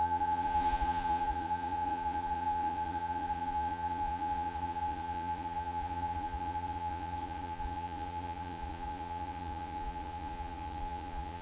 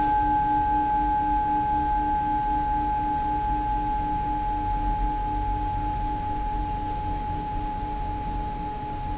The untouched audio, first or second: second